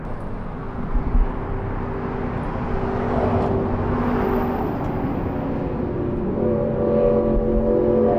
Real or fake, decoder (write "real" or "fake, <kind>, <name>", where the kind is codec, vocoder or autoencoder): real